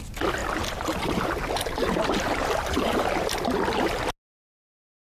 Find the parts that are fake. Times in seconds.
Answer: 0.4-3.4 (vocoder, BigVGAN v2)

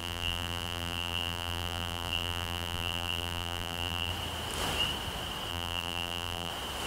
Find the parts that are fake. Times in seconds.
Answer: 0.0-4.1 (vocoder, BigVGAN v2); 5.5-6.5